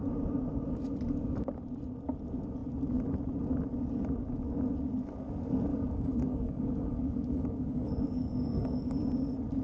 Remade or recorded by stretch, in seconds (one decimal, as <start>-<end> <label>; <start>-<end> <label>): 0.0-5.7 recorded; 5.7-8.9 remade; 8.9-9.6 recorded